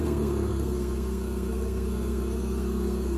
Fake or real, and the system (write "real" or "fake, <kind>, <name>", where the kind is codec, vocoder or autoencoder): fake, codec, SNAC